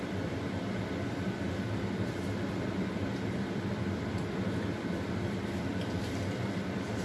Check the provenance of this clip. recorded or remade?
remade